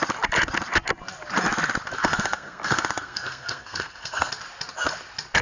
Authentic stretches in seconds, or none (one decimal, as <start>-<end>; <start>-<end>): 0.0-2.0; 4.3-5.4